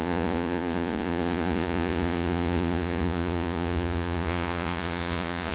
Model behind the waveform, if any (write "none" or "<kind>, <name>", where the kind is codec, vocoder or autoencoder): vocoder, Vocos